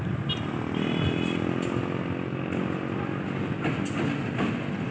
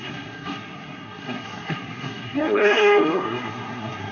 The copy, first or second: second